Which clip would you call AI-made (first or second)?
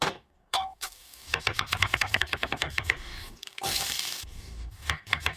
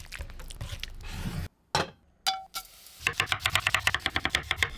first